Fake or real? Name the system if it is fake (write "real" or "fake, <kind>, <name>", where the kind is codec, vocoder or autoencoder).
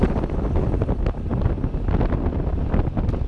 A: real